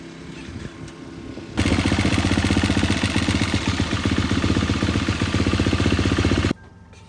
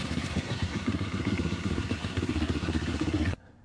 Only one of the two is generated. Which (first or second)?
second